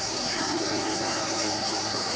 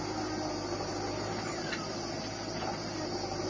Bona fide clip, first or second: second